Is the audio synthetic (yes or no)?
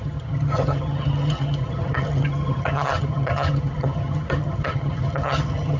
yes